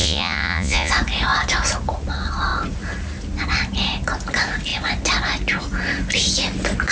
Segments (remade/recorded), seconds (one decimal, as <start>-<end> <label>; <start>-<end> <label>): 0.0-0.9 remade; 0.9-6.9 recorded